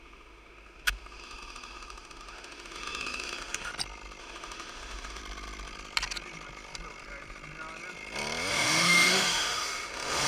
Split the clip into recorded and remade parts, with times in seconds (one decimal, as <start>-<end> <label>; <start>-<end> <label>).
0.0-3.7 remade; 3.7-4.2 recorded; 4.2-5.2 remade; 5.2-8.5 recorded; 8.5-10.3 remade